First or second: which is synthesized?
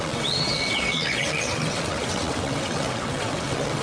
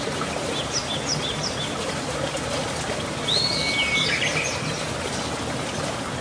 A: first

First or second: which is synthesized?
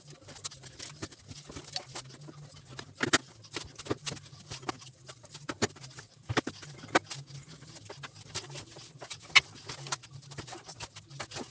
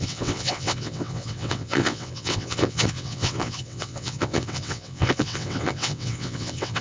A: second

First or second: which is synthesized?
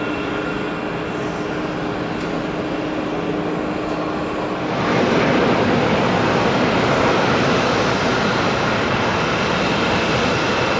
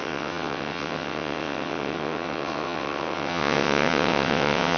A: second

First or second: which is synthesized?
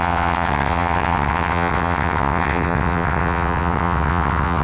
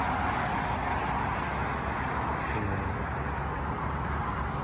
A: first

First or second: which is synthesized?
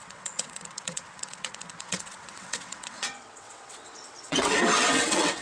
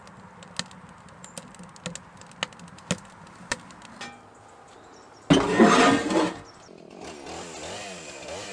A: first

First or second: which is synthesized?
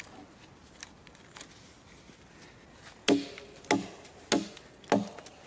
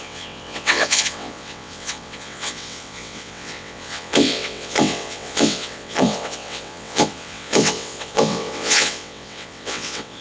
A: second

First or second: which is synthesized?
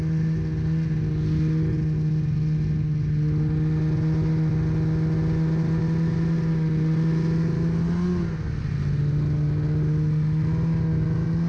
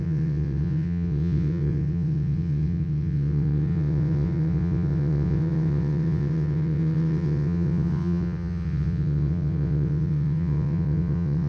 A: second